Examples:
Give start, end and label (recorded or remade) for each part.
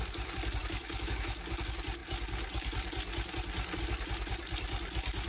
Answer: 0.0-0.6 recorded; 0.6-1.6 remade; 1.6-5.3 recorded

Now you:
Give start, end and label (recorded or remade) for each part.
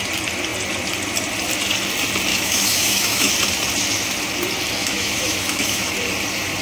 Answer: 0.0-2.3 recorded; 2.3-3.3 remade; 3.3-4.8 recorded; 4.8-5.9 remade; 5.9-6.6 recorded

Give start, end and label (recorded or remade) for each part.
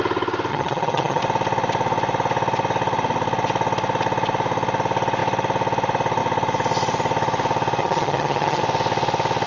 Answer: 0.0-0.5 recorded; 0.5-1.2 remade; 1.2-7.8 recorded; 7.8-8.6 remade; 8.6-9.5 recorded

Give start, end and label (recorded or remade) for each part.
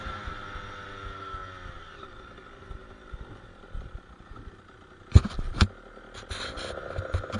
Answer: 0.0-7.4 recorded